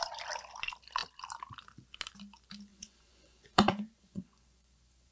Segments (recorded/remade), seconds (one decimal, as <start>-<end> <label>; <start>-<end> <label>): 0.0-2.7 recorded; 2.7-5.1 remade